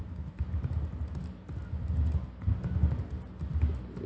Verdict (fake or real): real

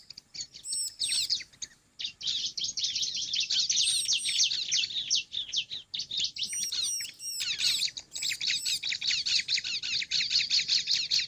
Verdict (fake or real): real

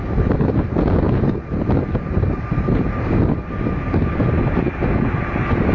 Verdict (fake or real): real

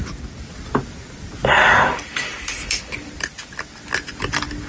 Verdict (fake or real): real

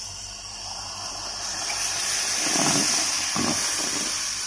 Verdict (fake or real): real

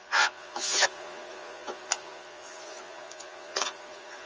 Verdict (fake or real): fake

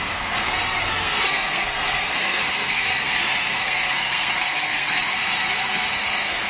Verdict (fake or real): fake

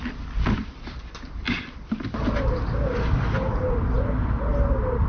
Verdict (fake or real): real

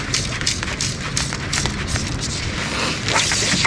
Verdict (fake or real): real